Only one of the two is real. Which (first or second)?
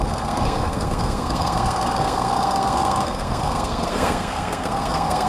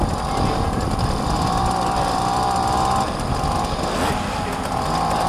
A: second